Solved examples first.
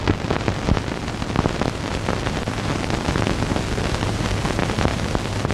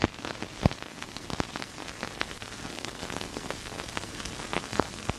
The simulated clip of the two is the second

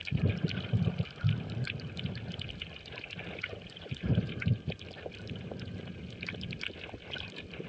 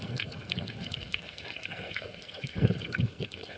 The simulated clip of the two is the second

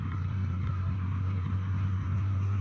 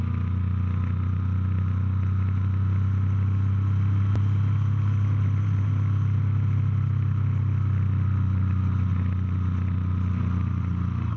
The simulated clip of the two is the first